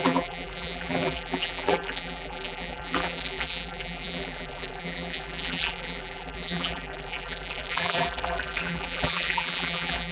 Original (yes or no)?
no